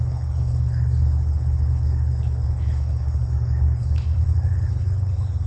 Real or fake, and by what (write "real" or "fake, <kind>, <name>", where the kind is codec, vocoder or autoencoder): fake, codec, HILCodec